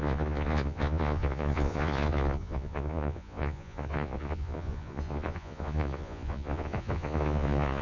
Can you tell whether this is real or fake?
fake